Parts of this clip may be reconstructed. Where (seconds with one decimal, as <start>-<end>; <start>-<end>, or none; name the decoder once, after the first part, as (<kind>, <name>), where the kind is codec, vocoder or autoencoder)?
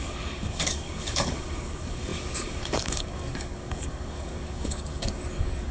0.0-5.7 (codec, DAC)